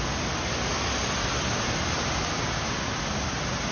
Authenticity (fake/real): real